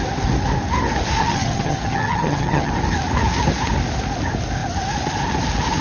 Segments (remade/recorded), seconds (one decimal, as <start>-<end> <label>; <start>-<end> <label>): 0.0-1.2 recorded; 1.2-2.7 remade; 2.7-5.8 recorded